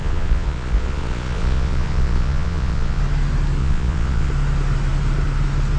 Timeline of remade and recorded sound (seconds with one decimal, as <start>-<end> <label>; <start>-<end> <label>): 0.0-3.0 remade; 3.0-3.6 recorded; 3.6-4.3 remade; 4.3-5.8 recorded